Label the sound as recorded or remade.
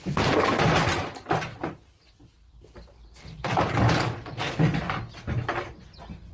recorded